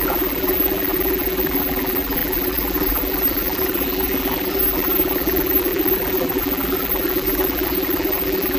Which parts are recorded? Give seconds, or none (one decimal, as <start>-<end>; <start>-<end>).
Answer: none